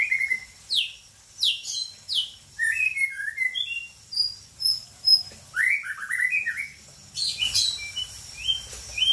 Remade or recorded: recorded